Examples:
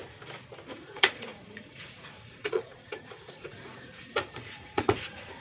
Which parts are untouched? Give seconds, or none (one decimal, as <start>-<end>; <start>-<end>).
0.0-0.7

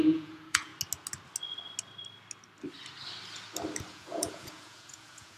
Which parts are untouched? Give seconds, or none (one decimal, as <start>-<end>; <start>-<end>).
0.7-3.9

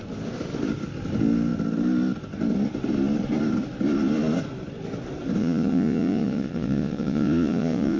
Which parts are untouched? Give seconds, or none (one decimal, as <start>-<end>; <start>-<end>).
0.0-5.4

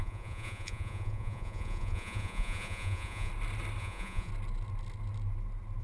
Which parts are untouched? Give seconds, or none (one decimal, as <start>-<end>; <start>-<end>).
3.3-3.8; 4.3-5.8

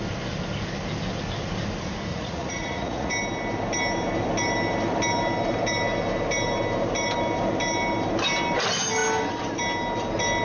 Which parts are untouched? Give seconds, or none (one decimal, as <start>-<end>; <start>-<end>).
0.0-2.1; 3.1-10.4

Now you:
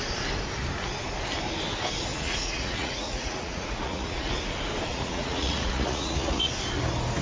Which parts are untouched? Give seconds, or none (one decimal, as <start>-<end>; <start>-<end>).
0.0-2.1; 4.3-4.9; 6.5-7.2